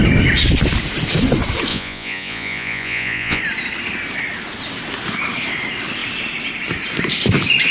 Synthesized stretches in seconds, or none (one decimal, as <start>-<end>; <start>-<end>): 1.7-3.4